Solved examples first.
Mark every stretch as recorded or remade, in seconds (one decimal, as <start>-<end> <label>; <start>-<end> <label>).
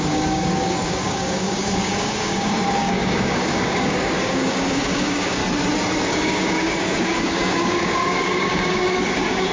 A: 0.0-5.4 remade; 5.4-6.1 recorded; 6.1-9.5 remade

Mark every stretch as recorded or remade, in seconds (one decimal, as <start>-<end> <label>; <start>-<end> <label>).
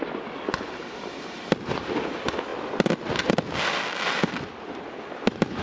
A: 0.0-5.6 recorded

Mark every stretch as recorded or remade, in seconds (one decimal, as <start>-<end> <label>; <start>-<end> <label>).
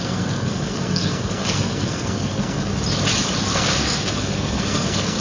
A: 0.0-2.7 remade; 2.7-3.4 recorded; 3.4-5.2 remade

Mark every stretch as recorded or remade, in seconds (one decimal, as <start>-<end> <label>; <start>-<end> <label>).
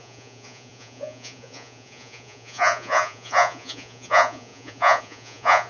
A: 0.0-5.7 remade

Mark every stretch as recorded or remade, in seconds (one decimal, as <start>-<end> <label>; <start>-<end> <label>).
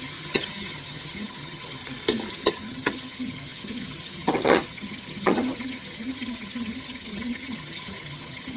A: 0.0-1.8 remade; 1.8-2.3 recorded; 2.3-8.6 remade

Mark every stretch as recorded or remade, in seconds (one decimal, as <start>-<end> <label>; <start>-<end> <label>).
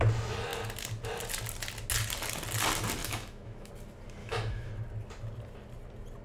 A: 0.0-3.0 recorded; 3.0-3.7 remade; 3.7-4.2 recorded; 4.2-4.7 remade; 4.7-6.2 recorded